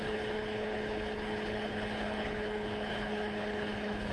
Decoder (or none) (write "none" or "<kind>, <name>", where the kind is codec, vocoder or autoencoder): codec, HILCodec